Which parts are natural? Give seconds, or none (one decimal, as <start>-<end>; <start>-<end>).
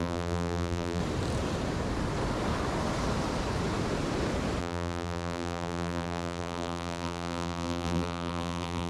1.0-4.6